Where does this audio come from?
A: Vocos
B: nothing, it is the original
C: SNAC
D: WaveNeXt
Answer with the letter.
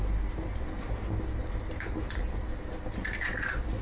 B